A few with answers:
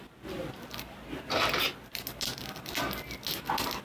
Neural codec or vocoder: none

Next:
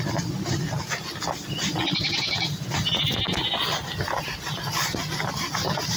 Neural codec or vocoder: none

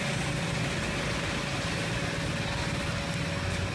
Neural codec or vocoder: none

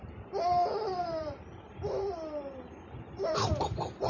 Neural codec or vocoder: vocoder, BigVGAN v2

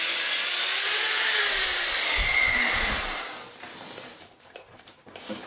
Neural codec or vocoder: vocoder, BigVGAN v2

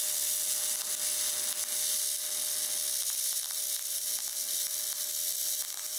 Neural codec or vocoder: none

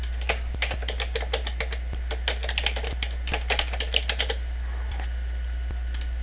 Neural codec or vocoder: none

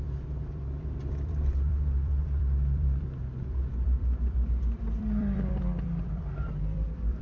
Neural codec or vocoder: vocoder, BigVGAN v2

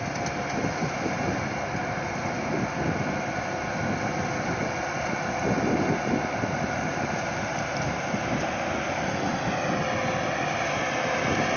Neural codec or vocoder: none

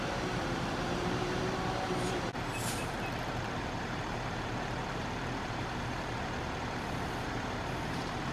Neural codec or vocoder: vocoder, BigVGAN v2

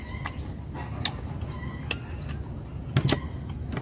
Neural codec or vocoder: none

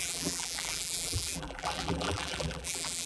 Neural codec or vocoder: vocoder, BigVGAN v2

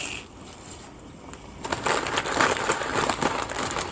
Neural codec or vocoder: none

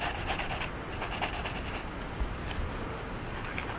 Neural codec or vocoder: none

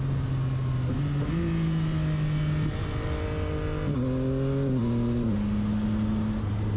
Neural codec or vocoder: none